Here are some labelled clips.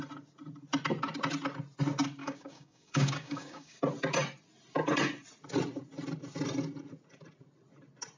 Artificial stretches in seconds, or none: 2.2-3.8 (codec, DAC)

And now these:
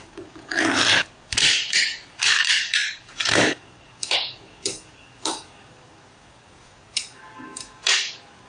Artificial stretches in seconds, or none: 0.0-8.5 (codec, DAC)

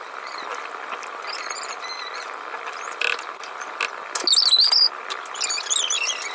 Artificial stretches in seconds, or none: none

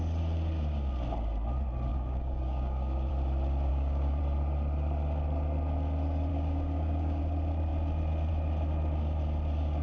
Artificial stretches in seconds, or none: 1.9-3.1 (codec, DAC); 3.7-4.2; 6.3-7.2

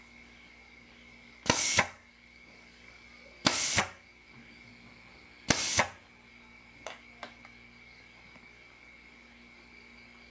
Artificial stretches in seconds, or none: 0.0-4.7 (codec, DAC); 6.3-10.3

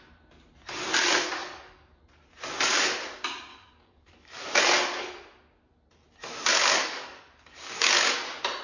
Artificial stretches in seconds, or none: 1.4-2.0 (codec, DAC); 3.5-4.6; 6.5-8.1